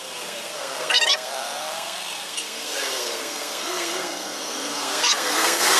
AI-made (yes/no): yes